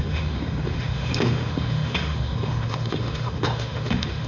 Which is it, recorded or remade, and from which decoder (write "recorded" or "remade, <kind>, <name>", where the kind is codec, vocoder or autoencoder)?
remade, autoencoder, DAC-VAE